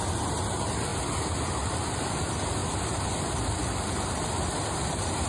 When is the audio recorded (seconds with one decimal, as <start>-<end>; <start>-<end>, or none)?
0.0-5.3